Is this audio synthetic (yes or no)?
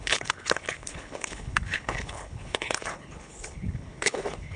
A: yes